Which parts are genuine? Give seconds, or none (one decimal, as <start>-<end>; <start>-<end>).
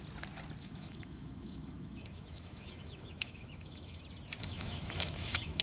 0.0-0.6; 4.0-4.4